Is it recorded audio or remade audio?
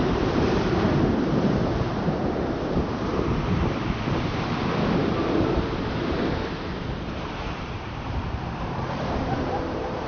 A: remade